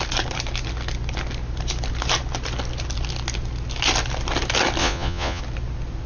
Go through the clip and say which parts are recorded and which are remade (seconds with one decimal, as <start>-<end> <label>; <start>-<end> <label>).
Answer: 0.0-4.8 recorded; 4.8-5.4 remade; 5.4-6.1 recorded